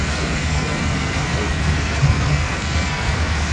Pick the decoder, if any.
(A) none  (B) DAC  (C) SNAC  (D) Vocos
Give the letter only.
C